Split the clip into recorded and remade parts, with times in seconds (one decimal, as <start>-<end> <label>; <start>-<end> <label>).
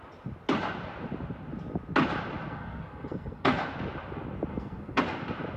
0.0-2.5 recorded; 2.5-3.5 remade; 3.5-4.5 recorded; 4.5-5.0 remade; 5.0-5.6 recorded